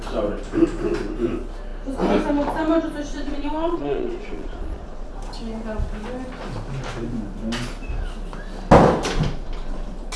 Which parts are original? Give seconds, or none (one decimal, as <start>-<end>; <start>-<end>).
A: 0.0-3.1; 5.1-10.2